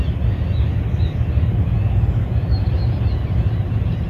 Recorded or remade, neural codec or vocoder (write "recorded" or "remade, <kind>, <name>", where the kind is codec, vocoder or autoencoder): recorded